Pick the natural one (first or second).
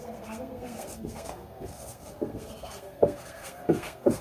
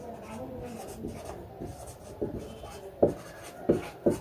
second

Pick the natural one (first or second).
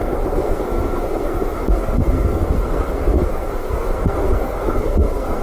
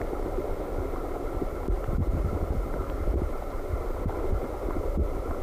second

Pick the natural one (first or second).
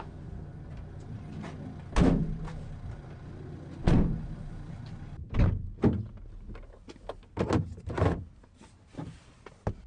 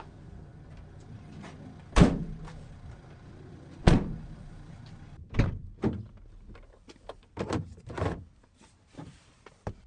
first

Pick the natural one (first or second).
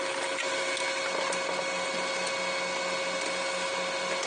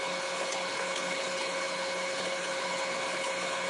first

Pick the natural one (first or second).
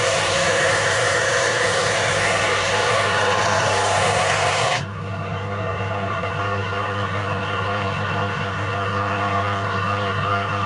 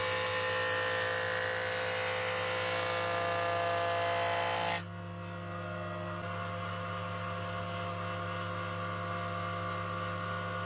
second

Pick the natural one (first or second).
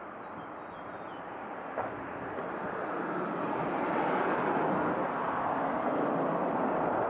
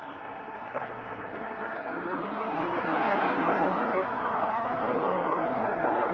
first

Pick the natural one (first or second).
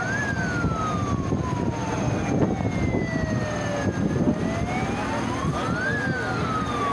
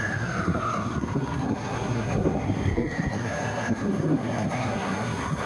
first